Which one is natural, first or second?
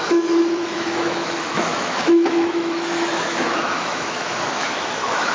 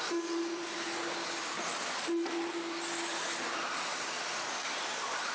second